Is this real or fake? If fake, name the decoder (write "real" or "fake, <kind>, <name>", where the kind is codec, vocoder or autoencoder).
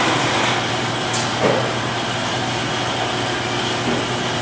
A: real